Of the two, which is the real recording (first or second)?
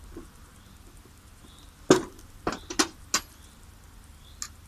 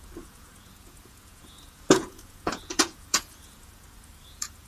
first